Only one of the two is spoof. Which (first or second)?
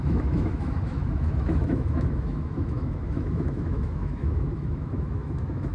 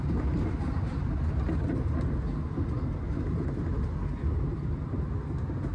first